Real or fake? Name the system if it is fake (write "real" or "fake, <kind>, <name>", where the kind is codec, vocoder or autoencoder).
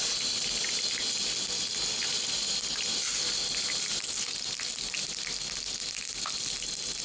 real